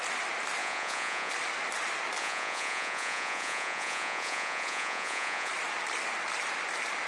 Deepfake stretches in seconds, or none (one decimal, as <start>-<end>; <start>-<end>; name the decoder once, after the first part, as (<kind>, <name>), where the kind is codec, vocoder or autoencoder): 0.6-1.3 (vocoder, Vocos); 2.2-5.5